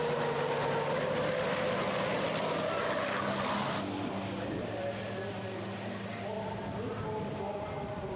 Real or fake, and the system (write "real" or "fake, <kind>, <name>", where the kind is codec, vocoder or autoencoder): real